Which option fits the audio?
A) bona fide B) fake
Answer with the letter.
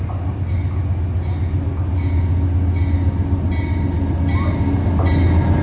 A